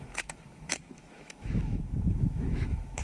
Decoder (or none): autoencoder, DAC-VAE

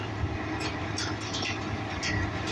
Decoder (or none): none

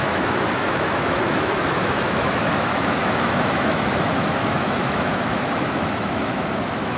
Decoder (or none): autoencoder, DAC-VAE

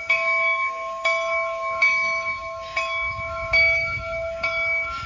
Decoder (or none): autoencoder, DAC-VAE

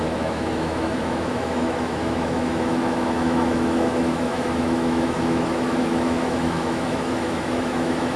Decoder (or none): autoencoder, DAC-VAE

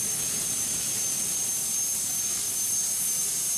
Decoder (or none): none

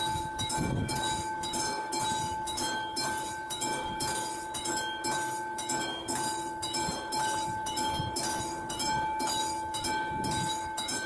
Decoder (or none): autoencoder, DAC-VAE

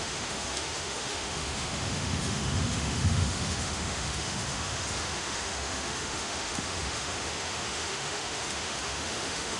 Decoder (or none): autoencoder, DAC-VAE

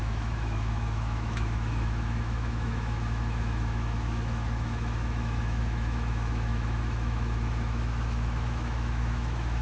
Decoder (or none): autoencoder, DAC-VAE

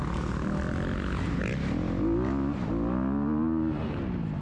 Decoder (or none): none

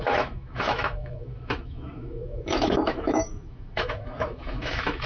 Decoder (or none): autoencoder, DAC-VAE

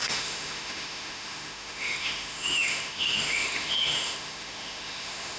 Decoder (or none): autoencoder, DAC-VAE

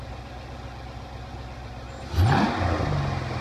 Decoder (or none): none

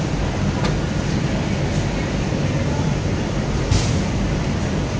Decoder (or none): none